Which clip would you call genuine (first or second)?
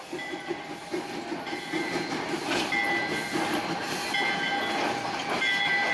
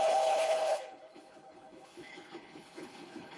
first